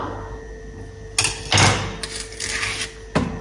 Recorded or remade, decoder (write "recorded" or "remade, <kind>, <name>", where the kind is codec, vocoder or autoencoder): recorded